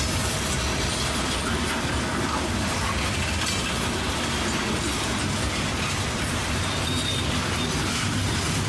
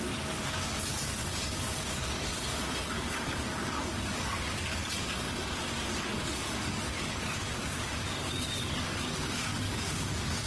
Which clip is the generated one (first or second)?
second